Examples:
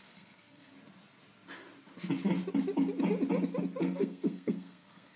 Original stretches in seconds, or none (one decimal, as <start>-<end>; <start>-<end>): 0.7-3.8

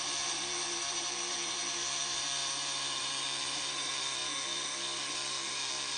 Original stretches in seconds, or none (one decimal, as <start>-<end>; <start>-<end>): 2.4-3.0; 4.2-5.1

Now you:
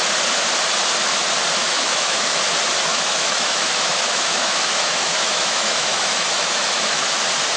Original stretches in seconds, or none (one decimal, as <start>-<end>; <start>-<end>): 0.0-1.6; 2.4-2.9; 7.0-7.6